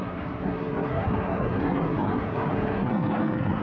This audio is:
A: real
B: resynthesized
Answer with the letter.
B